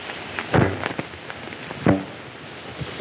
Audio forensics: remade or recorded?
recorded